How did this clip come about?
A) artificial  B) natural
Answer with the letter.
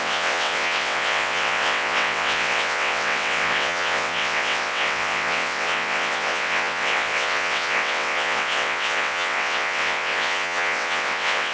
A